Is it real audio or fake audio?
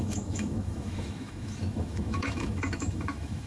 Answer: fake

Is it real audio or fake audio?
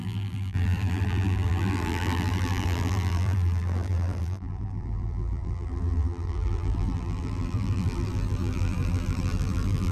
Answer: fake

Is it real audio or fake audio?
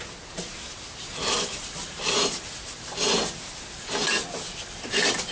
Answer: real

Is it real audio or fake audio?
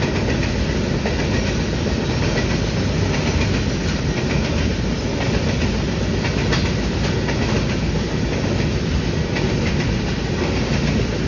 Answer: real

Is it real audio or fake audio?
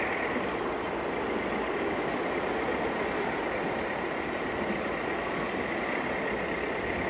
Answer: real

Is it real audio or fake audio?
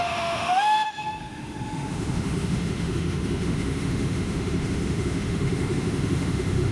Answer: fake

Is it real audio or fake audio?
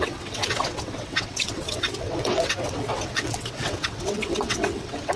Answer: fake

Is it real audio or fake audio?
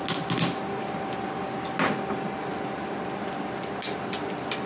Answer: real